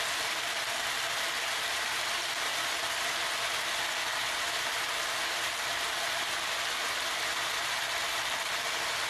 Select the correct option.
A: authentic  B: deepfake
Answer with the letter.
A